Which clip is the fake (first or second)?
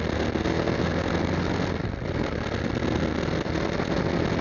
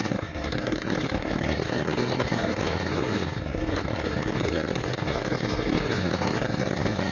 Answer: second